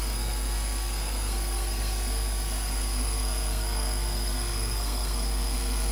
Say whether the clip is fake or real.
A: fake